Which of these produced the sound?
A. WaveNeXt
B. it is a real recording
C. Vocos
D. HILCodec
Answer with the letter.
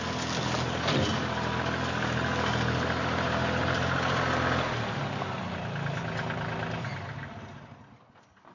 B